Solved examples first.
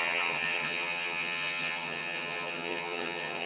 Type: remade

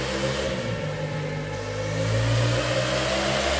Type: recorded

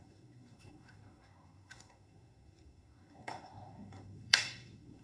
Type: remade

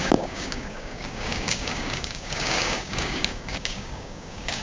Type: remade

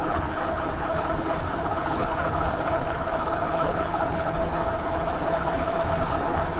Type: remade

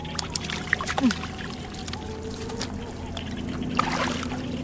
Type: recorded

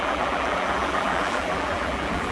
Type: remade